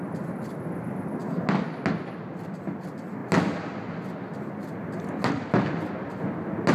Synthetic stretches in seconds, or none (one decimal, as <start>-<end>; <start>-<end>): none